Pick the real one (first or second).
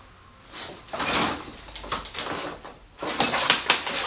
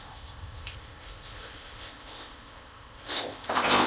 first